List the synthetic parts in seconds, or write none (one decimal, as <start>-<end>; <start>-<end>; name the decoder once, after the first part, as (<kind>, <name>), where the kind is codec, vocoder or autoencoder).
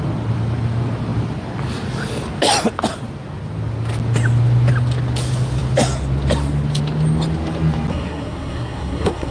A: 7.9-9.3 (codec, SNAC)